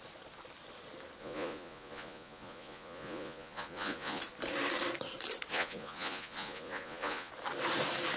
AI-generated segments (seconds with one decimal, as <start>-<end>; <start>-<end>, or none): 1.2-4.2; 5.5-7.3